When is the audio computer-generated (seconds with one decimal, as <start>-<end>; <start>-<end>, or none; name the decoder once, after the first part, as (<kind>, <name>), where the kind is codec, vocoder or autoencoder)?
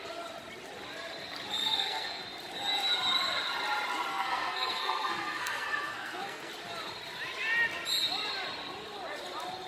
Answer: 1.6-2.2 (codec, SNAC); 4.1-6.5